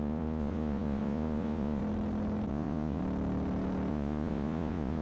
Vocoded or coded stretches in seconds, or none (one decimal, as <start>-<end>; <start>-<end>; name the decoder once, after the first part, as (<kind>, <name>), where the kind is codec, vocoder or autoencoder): 0.0-1.8 (vocoder, Vocos); 2.5-3.0; 3.9-5.0